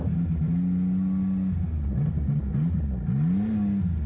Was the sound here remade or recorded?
recorded